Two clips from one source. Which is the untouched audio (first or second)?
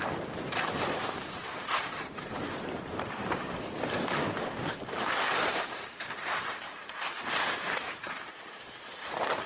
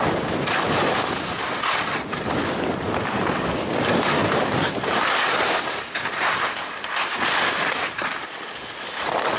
second